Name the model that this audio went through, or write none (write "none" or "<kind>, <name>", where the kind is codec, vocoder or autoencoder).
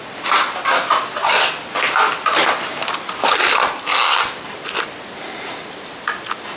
none